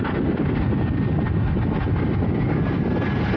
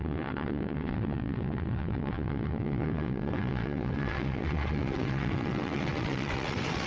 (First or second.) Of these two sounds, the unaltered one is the first